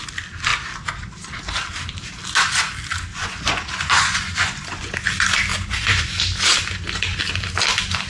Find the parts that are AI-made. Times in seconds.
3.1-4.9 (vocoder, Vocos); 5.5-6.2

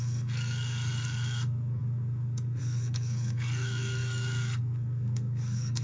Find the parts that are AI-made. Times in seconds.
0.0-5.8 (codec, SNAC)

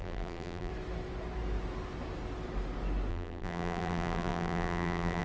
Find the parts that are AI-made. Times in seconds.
0.0-0.7 (vocoder, BigVGAN v2); 3.1-5.2